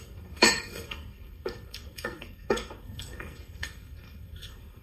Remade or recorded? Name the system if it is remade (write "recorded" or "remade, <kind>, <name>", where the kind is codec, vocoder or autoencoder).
remade, codec, SNAC